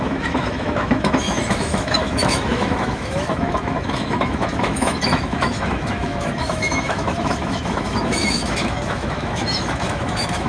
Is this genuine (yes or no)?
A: no